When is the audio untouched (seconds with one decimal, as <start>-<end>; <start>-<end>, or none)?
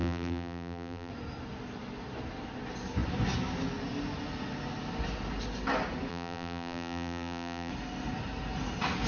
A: 1.1-6.1; 7.7-9.1